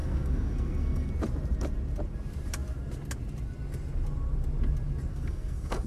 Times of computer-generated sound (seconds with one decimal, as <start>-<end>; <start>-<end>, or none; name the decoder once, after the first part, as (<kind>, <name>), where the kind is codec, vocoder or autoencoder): 0.0-1.1 (codec, SNAC); 5.1-5.9